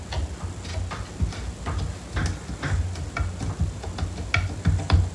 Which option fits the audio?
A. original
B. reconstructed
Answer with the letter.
A